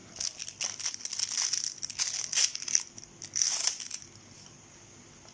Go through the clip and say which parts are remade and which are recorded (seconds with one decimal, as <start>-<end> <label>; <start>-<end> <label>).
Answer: 0.0-5.3 recorded